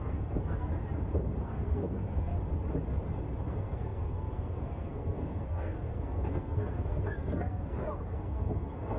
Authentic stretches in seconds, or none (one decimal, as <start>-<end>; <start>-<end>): 0.7-1.4; 2.3-3.5